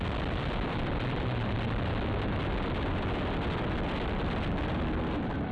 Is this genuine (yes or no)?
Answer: yes